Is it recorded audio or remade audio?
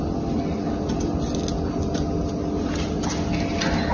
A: recorded